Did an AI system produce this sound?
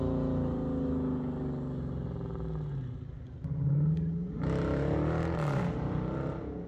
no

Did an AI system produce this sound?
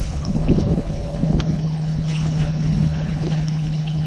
yes